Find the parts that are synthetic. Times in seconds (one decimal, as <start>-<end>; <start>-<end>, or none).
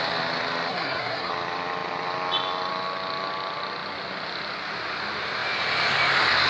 0.7-1.3